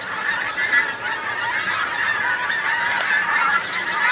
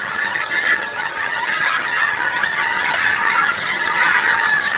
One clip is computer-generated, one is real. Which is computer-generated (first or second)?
second